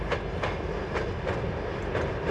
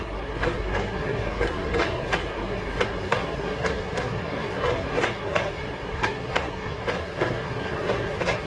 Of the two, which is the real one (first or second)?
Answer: first